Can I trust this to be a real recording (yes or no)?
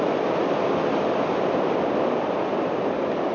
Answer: yes